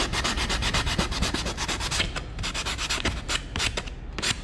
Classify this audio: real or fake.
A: real